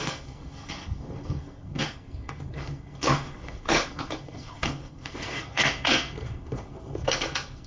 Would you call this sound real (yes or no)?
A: no